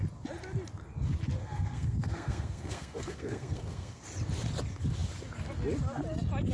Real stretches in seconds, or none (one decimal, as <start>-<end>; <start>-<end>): 0.0-1.4; 4.0-6.5